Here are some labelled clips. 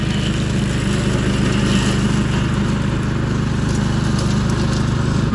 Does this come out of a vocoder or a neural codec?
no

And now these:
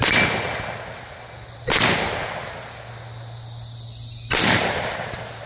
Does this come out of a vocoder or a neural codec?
no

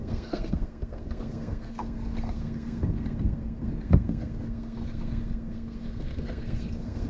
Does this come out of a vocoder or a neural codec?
yes